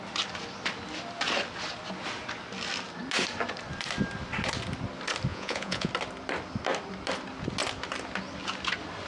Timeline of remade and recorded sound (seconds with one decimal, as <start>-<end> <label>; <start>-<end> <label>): 0.0-5.3 recorded; 5.3-5.9 remade; 5.9-9.1 recorded